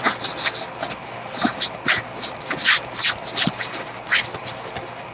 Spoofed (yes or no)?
no